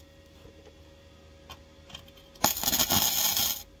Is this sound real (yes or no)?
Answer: yes